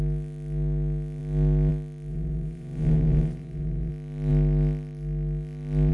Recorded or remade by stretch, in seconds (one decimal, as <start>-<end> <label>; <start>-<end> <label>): 0.0-2.1 recorded; 2.1-3.9 remade; 3.9-5.9 recorded